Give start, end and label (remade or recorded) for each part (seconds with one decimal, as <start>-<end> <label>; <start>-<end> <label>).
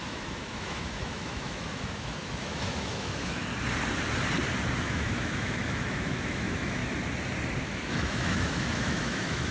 0.0-3.4 remade; 3.4-4.8 recorded; 4.8-6.8 remade; 6.8-7.6 recorded; 7.6-9.5 remade